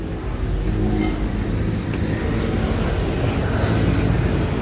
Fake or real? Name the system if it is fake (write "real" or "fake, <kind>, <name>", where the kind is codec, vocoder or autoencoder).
real